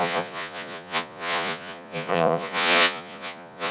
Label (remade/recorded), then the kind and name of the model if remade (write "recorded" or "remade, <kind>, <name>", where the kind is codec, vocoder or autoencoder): remade, vocoder, Vocos